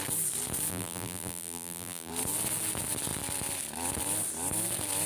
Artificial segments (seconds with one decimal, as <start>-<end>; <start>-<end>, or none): 0.7-2.1